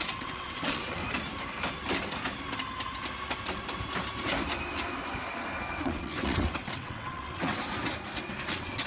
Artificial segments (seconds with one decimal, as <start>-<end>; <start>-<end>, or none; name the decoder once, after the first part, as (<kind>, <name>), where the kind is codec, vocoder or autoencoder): 0.0-1.0 (vocoder, WaveNeXt); 5.8-7.6; 8.5-8.9